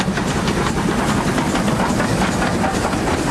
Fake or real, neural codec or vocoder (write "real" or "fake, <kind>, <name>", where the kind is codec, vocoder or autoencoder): real